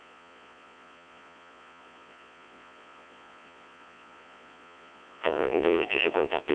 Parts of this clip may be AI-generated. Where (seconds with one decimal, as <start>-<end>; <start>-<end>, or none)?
0.0-6.5